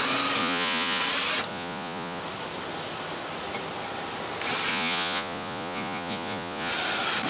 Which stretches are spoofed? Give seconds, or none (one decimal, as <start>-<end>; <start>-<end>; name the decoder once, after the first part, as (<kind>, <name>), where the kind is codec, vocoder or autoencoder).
0.4-1.0 (vocoder, Vocos); 1.5-2.2; 4.7-6.7